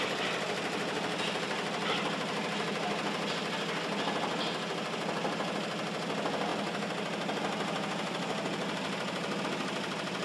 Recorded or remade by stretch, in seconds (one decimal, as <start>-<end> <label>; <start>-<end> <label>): 0.0-10.2 recorded